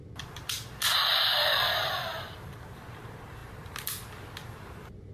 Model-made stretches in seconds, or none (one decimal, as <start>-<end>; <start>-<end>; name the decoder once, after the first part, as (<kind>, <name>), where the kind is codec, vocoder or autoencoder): none